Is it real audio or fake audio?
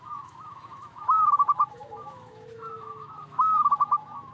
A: fake